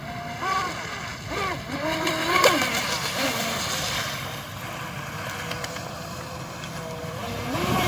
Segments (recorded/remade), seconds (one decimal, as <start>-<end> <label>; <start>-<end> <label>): 0.0-7.0 recorded; 7.0-7.9 remade